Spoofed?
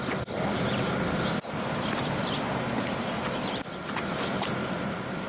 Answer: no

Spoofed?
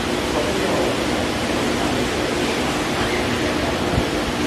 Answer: no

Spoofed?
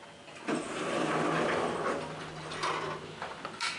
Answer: no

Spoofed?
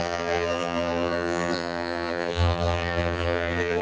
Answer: yes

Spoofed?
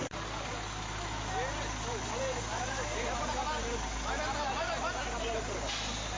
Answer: no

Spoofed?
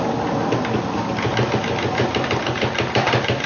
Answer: no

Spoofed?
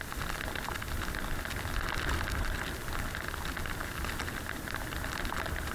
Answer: no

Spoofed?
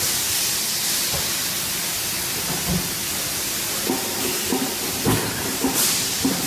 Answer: no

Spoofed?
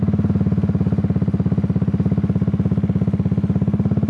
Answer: no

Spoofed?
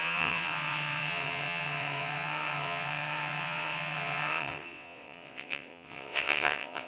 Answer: yes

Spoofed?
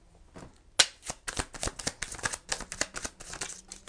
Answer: no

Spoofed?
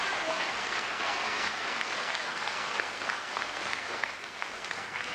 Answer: yes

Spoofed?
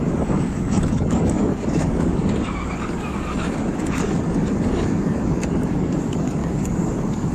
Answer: yes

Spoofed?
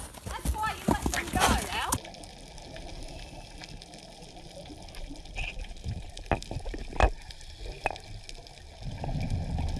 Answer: no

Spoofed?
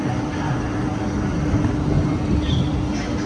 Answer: no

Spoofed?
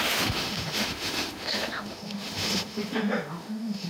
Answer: yes